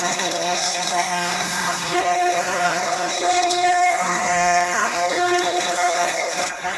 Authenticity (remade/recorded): remade